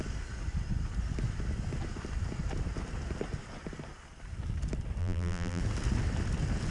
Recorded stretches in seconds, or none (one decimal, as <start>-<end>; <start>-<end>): 0.0-5.0; 5.6-6.7